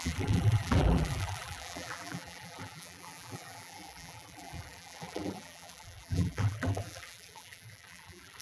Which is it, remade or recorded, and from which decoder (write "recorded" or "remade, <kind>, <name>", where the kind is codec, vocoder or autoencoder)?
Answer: remade, vocoder, BigVGAN v2